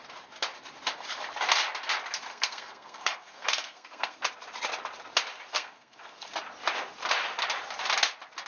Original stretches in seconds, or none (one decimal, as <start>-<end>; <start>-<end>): 0.0-2.3; 4.2-5.5; 6.3-8.5